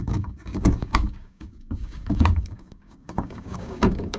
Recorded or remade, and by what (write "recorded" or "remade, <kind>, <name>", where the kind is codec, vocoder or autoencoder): remade, codec, DAC